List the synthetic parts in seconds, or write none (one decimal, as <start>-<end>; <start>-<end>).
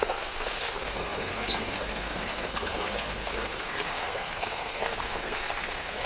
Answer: 0.0-6.1